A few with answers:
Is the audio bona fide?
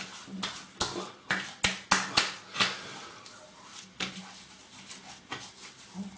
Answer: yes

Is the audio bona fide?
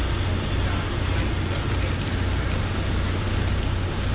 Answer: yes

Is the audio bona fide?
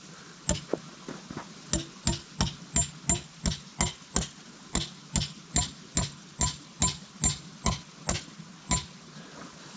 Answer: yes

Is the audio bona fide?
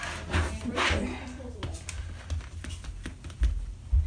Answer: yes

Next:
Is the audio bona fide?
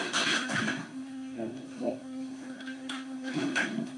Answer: no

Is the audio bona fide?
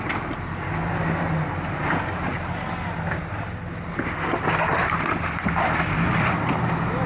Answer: yes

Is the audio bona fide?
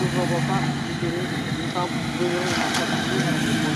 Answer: yes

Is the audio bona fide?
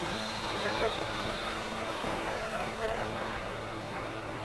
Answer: no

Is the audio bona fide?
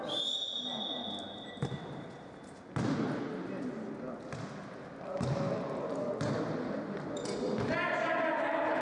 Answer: yes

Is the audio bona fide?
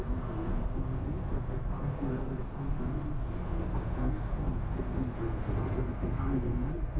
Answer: no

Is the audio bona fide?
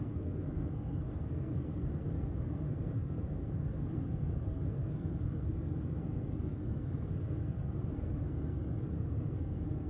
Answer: no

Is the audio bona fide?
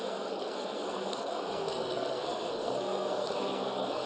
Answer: no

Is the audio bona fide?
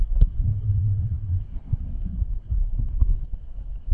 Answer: no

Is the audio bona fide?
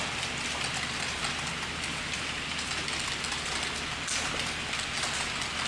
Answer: yes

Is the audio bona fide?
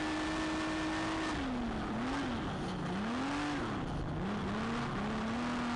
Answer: yes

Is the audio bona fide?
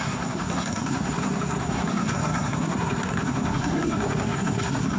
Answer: no